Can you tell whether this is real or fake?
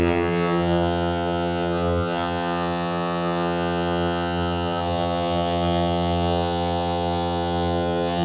fake